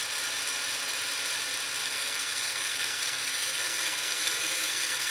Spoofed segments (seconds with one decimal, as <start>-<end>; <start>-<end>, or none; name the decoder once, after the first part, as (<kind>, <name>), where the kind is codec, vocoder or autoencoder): 1.8-5.1 (codec, SNAC)